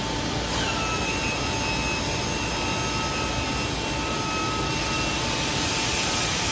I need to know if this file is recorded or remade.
recorded